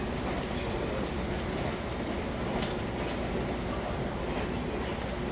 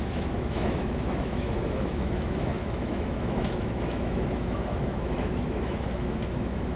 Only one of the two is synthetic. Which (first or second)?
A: second